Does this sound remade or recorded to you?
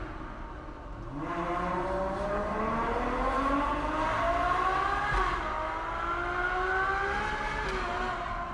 recorded